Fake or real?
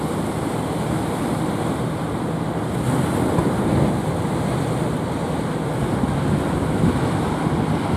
real